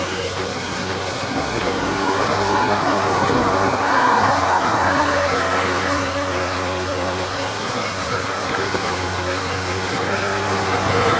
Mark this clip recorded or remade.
remade